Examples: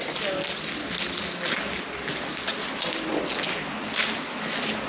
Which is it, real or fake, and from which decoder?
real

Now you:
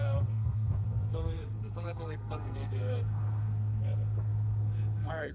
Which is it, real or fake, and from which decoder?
fake, codec, SNAC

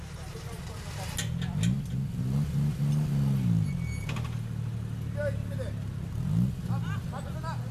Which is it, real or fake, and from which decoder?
real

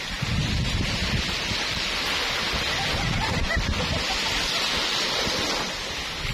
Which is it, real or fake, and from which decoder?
real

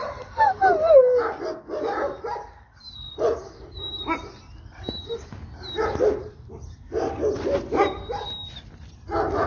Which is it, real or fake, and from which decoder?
real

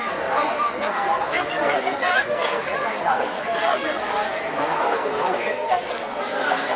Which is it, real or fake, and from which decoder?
fake, codec, SNAC